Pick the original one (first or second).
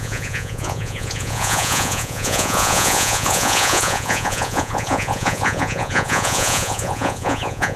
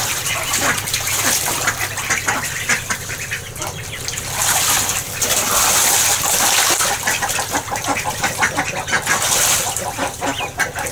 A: second